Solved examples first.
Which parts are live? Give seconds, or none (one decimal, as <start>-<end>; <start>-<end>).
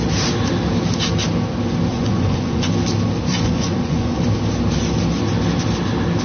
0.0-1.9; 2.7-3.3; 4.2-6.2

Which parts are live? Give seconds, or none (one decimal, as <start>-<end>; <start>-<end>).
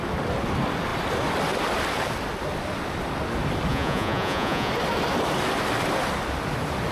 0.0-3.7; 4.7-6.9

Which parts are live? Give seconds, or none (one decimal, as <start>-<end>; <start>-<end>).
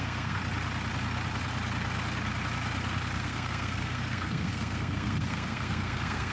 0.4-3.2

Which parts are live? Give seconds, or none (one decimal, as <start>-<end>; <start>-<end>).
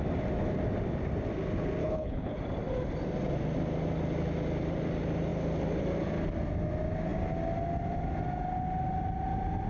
0.0-1.8; 2.4-9.7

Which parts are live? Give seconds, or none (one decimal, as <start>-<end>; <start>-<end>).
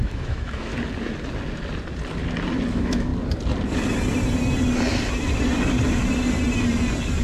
0.7-2.7; 3.1-7.2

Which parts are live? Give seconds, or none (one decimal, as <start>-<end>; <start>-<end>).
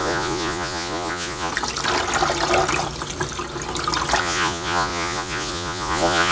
1.5-4.2